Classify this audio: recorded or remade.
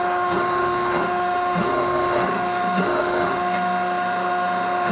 remade